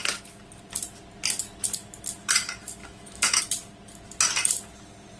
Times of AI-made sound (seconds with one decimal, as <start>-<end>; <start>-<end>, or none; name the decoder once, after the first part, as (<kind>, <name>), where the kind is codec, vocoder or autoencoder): 2.8-3.4 (autoencoder, DAC-VAE)